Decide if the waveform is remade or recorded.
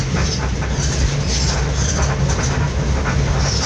recorded